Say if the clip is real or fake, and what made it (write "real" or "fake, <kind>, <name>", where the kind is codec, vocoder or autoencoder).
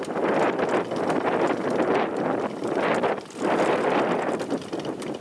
real